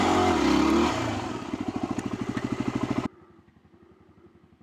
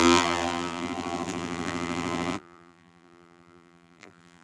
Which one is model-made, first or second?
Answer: second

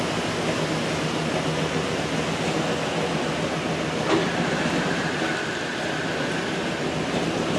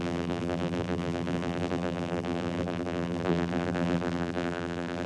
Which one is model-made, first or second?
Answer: second